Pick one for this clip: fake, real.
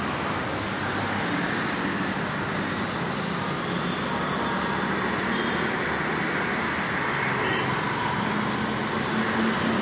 real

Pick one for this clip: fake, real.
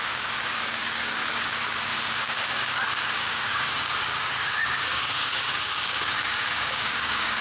fake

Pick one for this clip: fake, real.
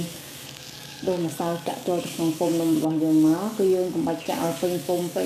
fake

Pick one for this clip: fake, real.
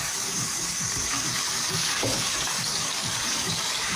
fake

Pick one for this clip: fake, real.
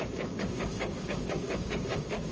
fake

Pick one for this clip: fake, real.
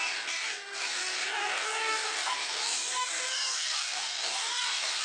fake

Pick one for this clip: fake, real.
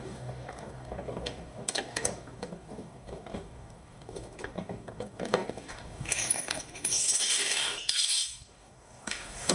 fake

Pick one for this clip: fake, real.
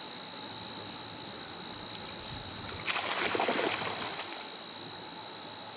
real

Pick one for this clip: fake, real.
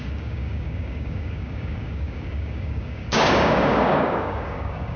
fake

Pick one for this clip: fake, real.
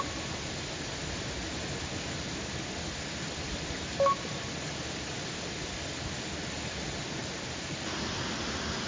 real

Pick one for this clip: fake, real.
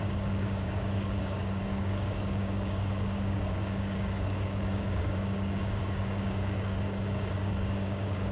fake